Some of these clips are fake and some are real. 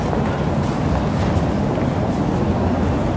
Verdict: real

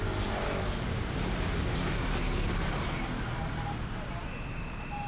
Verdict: real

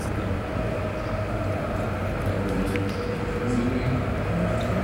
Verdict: real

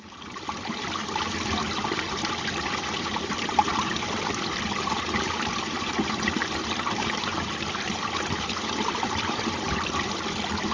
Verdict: real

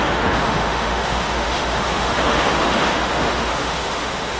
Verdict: fake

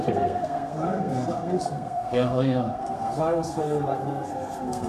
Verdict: fake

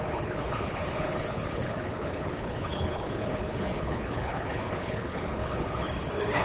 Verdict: fake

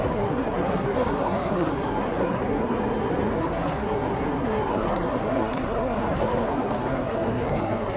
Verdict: fake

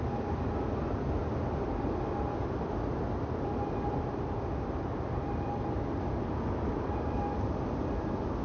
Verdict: real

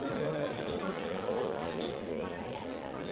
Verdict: fake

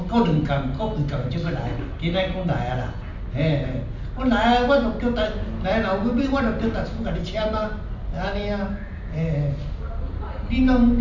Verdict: real